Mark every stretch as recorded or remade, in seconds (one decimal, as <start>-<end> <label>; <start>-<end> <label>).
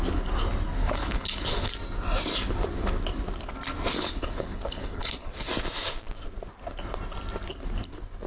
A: 0.0-0.8 recorded; 0.8-1.7 remade; 1.7-3.9 recorded; 3.9-5.5 remade; 5.5-8.3 recorded